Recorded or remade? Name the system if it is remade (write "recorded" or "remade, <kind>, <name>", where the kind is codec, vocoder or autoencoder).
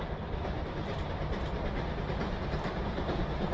recorded